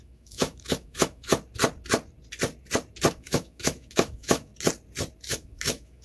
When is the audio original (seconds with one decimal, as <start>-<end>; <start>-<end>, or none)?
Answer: 1.3-3.1; 4.5-5.3